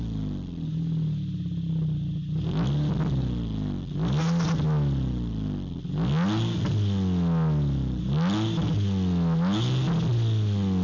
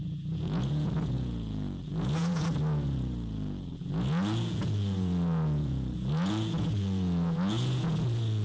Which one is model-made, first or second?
second